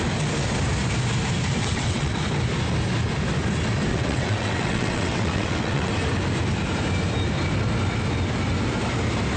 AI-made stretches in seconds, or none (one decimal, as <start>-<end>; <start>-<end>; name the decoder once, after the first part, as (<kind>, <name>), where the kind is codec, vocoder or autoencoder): 1.6-2.2 (vocoder, WaveNeXt); 3.9-5.9